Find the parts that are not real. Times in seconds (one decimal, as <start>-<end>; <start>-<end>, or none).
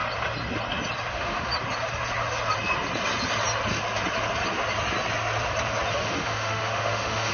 1.1-1.5; 5.9-7.3